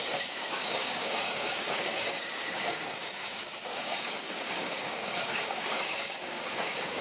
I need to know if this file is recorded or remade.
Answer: remade